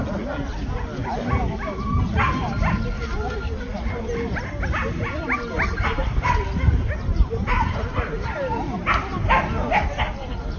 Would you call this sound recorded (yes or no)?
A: yes